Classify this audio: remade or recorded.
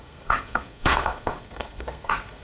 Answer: remade